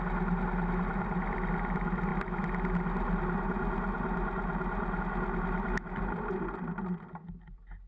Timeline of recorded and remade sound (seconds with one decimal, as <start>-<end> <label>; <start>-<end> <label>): 0.0-7.9 recorded